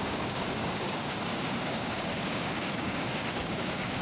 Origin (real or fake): fake